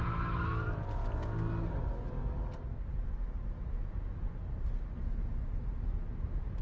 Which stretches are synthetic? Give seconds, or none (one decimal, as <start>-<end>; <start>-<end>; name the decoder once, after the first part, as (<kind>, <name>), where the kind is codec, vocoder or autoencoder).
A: 3.7-4.3 (vocoder, Vocos)